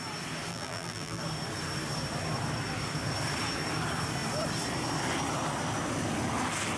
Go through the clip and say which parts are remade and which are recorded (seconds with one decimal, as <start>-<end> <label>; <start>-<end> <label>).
0.0-0.5 recorded; 0.5-1.2 remade; 1.2-6.8 recorded